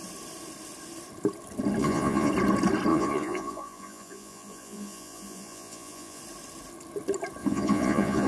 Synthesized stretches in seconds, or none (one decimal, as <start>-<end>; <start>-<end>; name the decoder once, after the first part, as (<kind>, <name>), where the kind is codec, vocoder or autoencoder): 1.8-2.3 (vocoder, Vocos); 2.9-6.2; 7.4-8.3